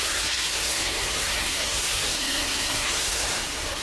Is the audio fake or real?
fake